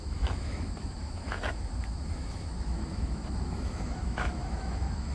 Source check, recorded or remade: remade